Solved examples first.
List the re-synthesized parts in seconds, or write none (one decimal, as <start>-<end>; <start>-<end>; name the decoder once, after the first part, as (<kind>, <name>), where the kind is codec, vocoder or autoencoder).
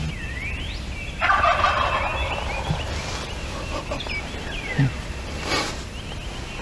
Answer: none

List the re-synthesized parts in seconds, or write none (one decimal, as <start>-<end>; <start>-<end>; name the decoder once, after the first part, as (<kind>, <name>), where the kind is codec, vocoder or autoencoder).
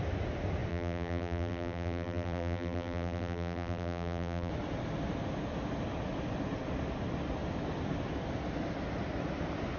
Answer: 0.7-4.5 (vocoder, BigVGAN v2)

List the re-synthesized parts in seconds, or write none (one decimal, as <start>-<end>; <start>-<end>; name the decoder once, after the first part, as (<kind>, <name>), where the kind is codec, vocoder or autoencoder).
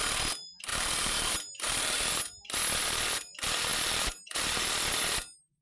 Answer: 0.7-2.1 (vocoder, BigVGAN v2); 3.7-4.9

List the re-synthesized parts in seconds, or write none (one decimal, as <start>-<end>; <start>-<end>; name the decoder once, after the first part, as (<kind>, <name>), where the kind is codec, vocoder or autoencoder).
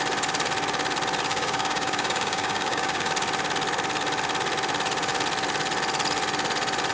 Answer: 1.3-3.1 (codec, DAC)